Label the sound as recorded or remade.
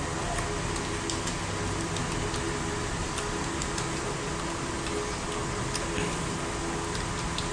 recorded